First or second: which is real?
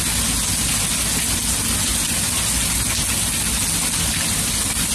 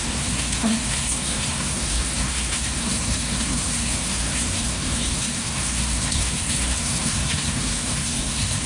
first